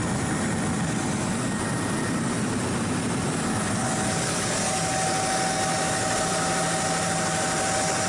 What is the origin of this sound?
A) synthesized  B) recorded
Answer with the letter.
B